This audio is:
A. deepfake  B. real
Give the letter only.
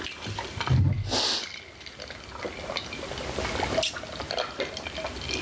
B